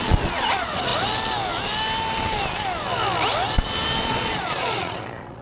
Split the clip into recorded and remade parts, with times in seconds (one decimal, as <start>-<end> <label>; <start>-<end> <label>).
0.0-0.9 remade; 0.9-4.0 recorded; 4.0-5.4 remade